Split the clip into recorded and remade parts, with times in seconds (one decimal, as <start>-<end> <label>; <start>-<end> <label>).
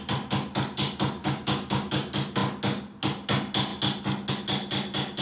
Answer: 0.0-1.2 recorded; 1.2-1.9 remade; 1.9-5.2 recorded